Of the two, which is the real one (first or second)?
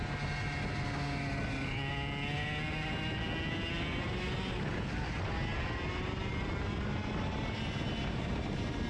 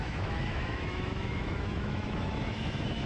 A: first